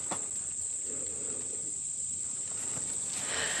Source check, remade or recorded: recorded